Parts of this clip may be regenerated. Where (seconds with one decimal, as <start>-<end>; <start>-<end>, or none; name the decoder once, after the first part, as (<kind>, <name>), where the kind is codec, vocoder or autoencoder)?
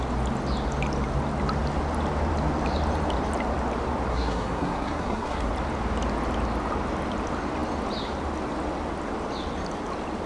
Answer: 4.1-5.5 (codec, SNAC)